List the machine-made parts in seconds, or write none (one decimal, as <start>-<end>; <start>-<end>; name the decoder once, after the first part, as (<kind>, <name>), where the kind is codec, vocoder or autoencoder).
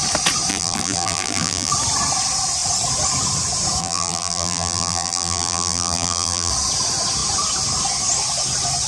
0.5-1.7 (vocoder, BigVGAN v2); 3.8-6.5